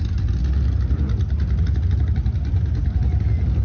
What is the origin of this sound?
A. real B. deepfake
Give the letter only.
A